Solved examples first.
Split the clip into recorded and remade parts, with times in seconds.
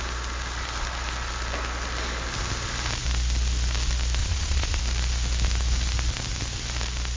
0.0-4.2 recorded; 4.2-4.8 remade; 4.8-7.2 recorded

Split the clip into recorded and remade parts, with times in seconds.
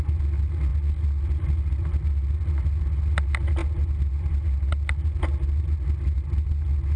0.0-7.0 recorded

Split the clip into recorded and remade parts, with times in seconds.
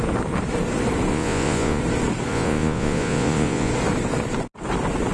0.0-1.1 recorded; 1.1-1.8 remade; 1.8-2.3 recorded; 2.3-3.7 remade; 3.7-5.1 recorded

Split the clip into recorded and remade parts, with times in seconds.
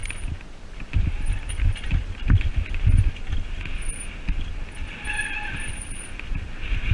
0.0-6.9 recorded